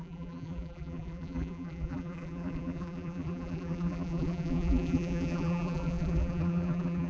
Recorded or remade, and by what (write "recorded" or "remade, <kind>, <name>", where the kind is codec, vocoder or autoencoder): remade, vocoder, BigVGAN v2